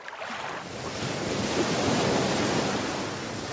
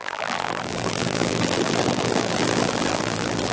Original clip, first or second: first